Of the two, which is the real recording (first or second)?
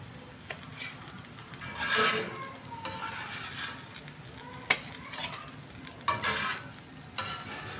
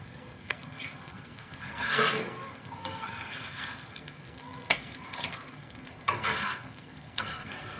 first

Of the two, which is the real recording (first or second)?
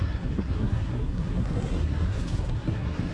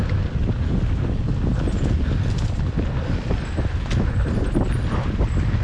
second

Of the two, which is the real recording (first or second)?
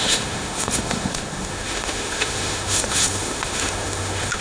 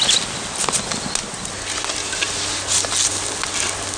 second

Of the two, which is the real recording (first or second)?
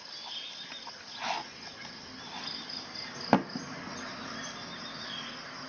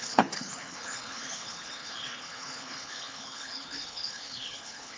first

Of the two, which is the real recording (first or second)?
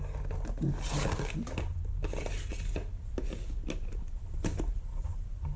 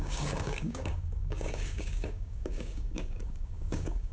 first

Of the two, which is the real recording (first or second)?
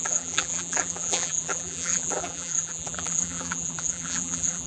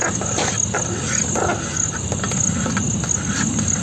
second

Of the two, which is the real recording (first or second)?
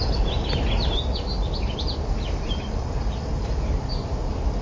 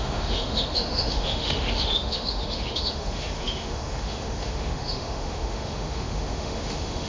first